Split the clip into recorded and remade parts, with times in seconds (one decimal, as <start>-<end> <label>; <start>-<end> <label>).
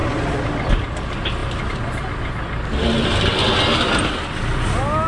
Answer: 0.0-5.1 recorded